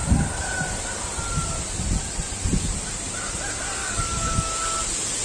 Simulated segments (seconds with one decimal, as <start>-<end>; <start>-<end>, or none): 3.8-4.5